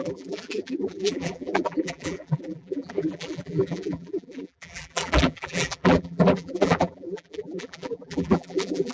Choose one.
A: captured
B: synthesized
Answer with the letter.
B